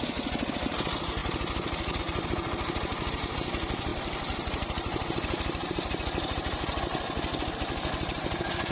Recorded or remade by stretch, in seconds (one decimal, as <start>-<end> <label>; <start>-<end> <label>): 0.0-8.7 recorded